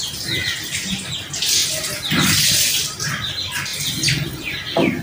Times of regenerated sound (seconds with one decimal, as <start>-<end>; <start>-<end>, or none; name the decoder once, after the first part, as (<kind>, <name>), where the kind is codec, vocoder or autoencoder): none